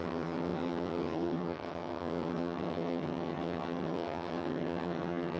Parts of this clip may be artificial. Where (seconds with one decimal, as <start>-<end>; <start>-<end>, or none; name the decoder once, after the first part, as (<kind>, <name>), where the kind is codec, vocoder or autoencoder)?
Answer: 0.0-5.4 (vocoder, HiFi-GAN)